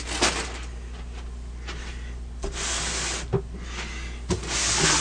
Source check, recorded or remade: recorded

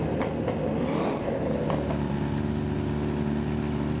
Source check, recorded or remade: recorded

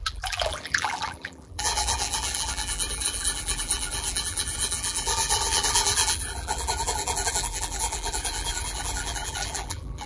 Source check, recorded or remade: remade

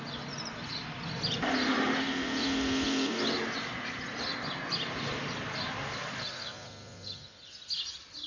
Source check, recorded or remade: recorded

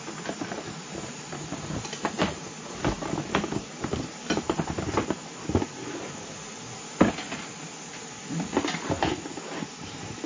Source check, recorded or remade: recorded